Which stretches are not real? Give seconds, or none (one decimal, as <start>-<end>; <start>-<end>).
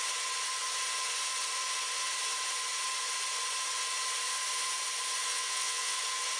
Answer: 5.3-6.0